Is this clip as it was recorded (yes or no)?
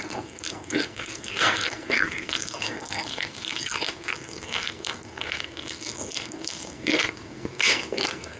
no